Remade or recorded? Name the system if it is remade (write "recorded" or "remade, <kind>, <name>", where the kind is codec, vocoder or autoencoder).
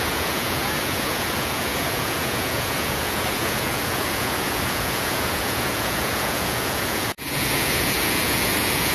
remade, vocoder, Vocos